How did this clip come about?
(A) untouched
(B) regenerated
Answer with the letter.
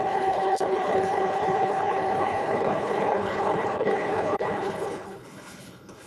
B